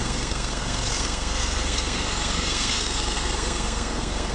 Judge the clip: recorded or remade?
remade